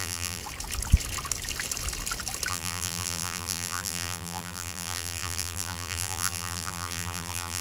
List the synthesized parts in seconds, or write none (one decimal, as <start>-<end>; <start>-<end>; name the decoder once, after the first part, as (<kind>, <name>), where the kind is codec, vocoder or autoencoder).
0.0-0.4 (vocoder, BigVGAN v2); 2.5-7.6